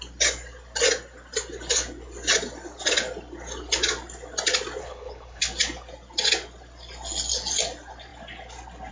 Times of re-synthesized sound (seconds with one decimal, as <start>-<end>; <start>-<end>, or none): 4.8-5.4